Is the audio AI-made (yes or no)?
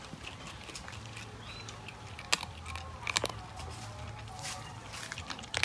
no